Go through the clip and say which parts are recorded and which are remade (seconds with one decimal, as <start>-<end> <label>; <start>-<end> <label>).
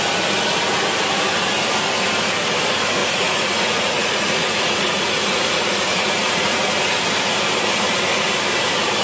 0.0-3.0 recorded; 3.0-6.7 remade; 6.7-9.0 recorded